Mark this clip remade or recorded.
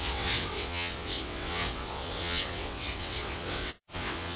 remade